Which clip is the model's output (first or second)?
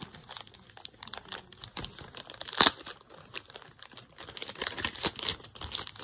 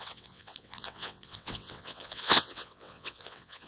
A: second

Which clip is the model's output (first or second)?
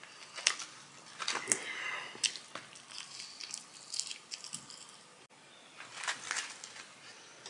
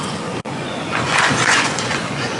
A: second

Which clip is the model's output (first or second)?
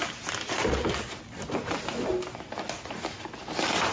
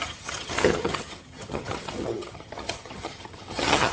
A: second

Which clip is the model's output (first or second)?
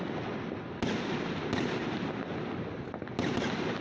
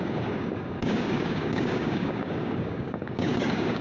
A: second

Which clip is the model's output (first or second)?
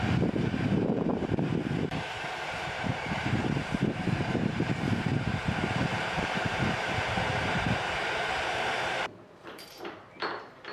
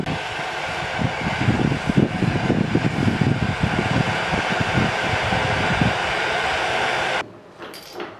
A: first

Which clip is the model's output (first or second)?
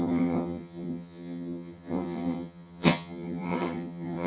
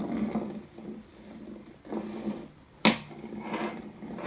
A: first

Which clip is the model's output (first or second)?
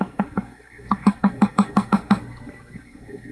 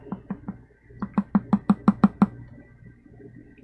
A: first